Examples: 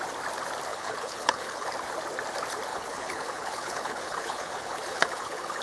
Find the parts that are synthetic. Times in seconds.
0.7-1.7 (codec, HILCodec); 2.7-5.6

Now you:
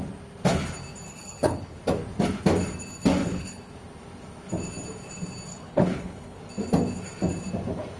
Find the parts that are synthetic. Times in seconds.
1.1-1.8 (codec, HILCodec); 3.2-3.7; 5.5-6.4

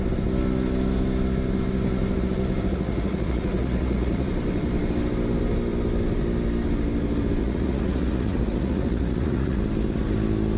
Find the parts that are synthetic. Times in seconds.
2.7-4.3 (vocoder, Vocos); 7.4-9.6

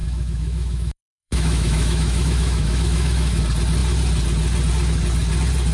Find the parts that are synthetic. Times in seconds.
0.0-3.4 (autoencoder, DAC-VAE)

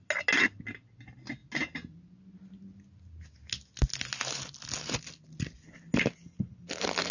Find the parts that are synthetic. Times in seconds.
none

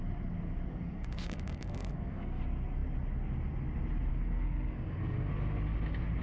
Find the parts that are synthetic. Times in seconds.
0.7-2.4 (codec, SNAC); 4.1-5.3

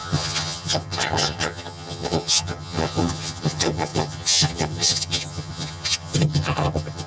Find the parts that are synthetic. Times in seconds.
0.0-7.1 (vocoder, HiFi-GAN)

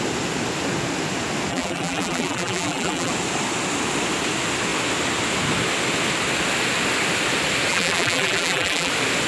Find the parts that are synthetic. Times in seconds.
1.5-3.1 (vocoder, BigVGAN v2); 7.7-8.9